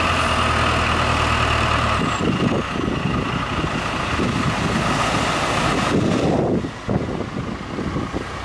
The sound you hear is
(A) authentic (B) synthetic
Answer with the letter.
A